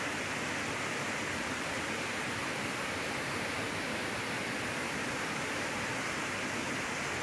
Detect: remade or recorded recorded